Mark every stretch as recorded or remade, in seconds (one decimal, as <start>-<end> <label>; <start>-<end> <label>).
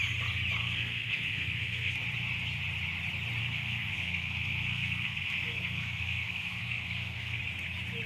0.0-0.6 recorded; 0.6-1.9 remade; 1.9-3.4 recorded; 3.4-7.4 remade; 7.4-8.1 recorded